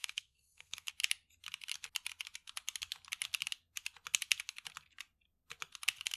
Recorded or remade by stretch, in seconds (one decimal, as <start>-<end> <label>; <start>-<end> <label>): 0.0-0.9 remade; 0.9-6.2 recorded